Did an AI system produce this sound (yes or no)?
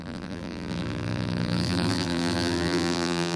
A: yes